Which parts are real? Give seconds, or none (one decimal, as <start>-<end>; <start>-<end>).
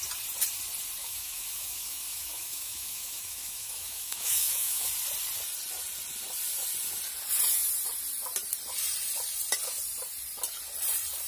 0.0-1.0; 4.9-11.3